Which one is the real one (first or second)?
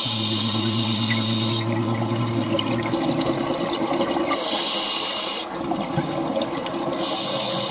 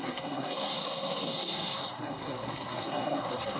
first